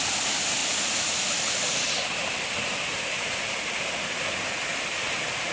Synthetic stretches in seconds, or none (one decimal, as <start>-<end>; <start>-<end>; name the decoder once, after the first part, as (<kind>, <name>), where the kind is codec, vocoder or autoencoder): 0.6-3.9 (vocoder, BigVGAN v2); 4.7-5.5